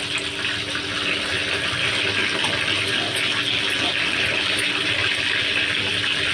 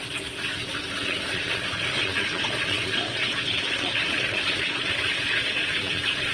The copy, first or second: second